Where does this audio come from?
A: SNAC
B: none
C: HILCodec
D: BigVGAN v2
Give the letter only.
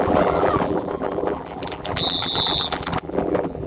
D